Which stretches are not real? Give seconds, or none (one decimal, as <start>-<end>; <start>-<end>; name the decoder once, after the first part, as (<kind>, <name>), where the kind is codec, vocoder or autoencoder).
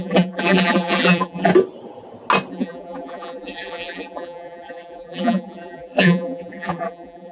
0.0-1.5 (vocoder, BigVGAN v2); 2.5-7.3